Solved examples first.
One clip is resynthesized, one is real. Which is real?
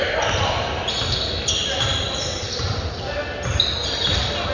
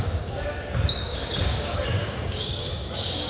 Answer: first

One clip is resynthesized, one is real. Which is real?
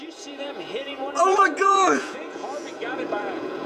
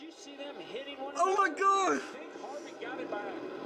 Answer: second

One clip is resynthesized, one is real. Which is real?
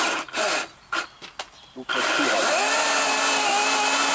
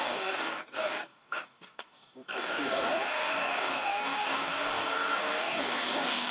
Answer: first